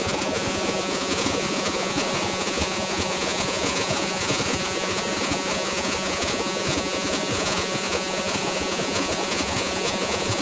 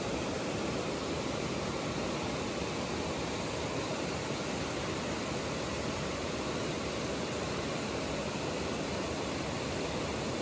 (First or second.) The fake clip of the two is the first